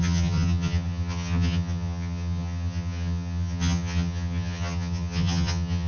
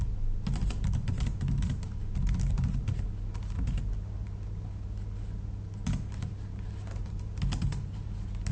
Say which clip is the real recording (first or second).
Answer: second